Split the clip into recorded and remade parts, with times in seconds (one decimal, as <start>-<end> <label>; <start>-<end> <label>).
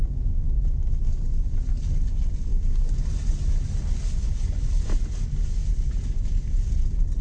0.0-7.2 recorded